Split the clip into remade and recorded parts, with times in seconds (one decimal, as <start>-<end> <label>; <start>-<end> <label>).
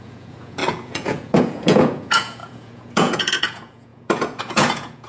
0.0-5.1 remade